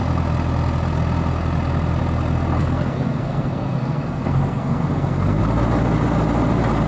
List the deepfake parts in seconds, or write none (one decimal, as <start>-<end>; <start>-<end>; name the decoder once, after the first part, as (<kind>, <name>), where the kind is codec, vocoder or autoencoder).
2.6-5.4 (codec, SNAC)